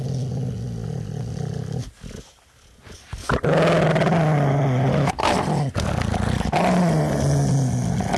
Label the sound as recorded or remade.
recorded